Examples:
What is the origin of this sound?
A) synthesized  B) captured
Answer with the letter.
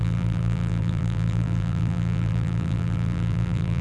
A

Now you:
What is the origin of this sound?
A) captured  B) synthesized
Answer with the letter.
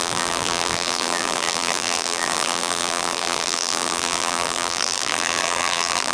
B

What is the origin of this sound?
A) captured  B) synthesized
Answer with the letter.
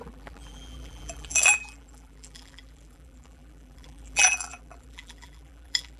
B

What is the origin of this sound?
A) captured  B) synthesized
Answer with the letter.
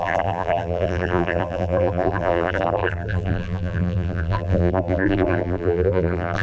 B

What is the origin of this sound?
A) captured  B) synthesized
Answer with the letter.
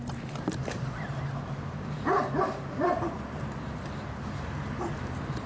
B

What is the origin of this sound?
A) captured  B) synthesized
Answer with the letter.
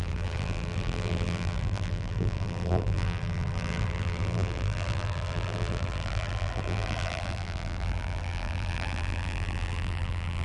B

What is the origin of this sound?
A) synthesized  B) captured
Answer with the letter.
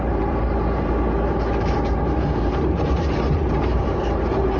A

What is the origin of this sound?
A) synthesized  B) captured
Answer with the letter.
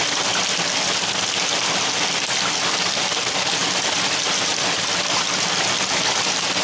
B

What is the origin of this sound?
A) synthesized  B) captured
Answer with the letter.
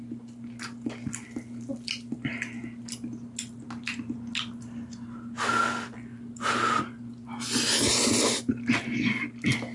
B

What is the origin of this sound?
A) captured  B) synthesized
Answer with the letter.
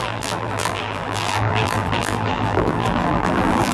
B